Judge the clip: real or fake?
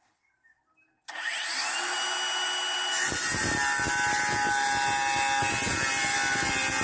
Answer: real